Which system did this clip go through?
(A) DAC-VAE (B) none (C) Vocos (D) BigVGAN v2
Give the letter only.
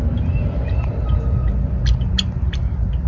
B